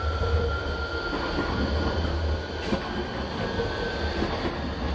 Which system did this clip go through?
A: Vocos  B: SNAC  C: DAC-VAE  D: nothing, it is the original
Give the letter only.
D